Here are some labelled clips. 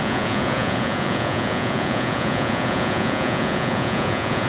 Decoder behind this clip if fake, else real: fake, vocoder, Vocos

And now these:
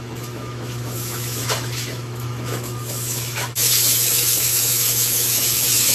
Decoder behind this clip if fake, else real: fake, autoencoder, DAC-VAE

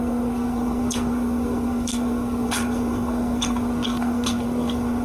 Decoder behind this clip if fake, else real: fake, codec, SNAC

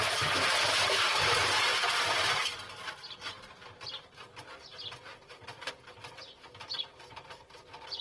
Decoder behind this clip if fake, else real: fake, vocoder, BigVGAN v2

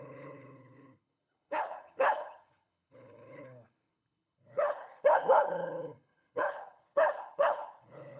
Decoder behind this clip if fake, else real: fake, codec, HILCodec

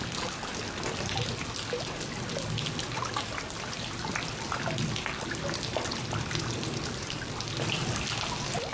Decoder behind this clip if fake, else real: real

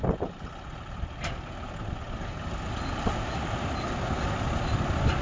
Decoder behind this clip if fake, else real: real